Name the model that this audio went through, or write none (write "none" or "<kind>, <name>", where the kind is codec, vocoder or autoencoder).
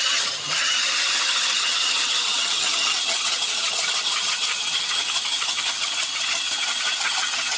vocoder, HiFi-GAN